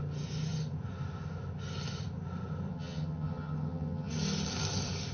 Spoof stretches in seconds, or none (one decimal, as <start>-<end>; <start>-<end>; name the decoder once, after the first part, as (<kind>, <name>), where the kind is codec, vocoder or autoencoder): 2.7-4.1 (vocoder, HiFi-GAN)